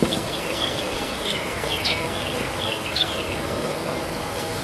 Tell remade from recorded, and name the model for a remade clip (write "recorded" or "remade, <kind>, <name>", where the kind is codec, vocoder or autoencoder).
remade, codec, SNAC